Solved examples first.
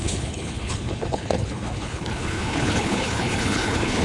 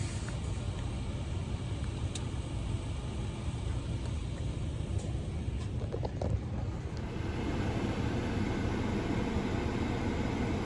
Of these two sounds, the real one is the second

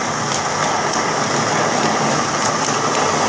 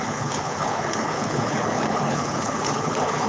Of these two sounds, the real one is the first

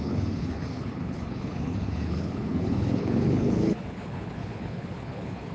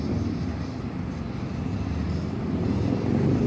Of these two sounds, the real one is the second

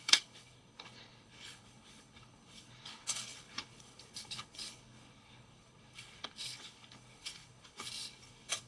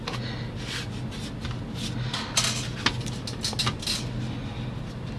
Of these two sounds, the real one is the second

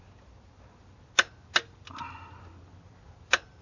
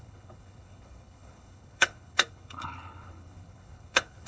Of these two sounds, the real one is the first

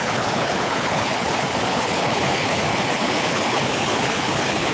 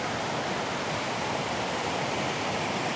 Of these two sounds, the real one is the second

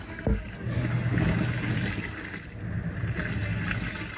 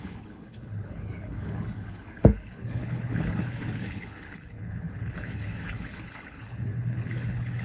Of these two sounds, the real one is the first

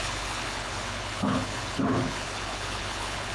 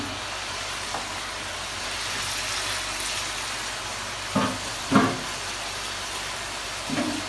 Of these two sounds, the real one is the second